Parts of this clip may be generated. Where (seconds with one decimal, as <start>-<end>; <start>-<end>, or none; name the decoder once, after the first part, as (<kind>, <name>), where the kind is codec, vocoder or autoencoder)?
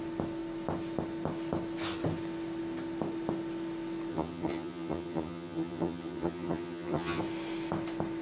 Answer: 4.1-7.2 (vocoder, HiFi-GAN)